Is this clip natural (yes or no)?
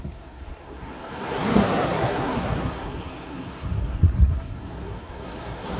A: no